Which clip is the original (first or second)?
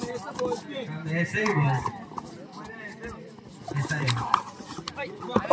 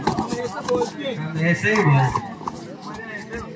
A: second